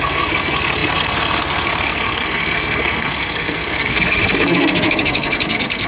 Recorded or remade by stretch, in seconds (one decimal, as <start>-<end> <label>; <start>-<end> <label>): 0.0-5.9 remade